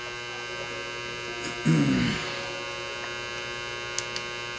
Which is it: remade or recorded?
recorded